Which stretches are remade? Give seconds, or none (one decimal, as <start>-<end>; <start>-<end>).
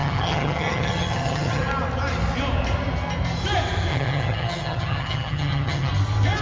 0.0-1.7; 3.9-5.9